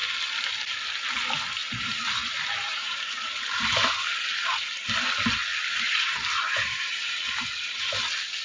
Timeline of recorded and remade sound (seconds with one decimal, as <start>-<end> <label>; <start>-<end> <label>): 0.0-1.6 recorded; 1.6-4.1 remade; 4.1-5.5 recorded; 5.5-8.0 remade; 8.0-8.4 recorded